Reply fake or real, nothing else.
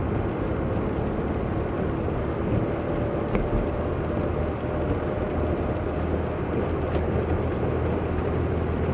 real